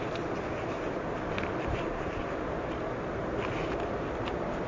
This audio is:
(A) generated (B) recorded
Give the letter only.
B